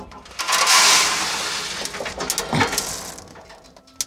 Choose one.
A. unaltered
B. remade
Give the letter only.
A